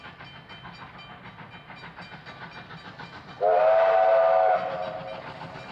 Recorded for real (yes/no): yes